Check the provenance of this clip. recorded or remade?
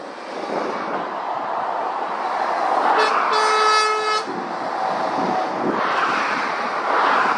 recorded